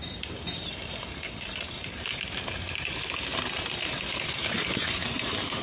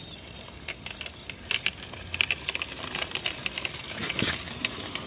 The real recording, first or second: second